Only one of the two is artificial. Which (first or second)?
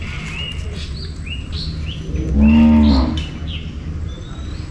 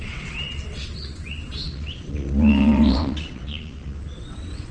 second